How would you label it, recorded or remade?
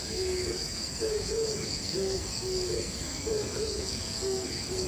remade